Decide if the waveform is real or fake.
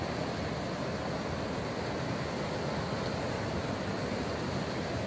real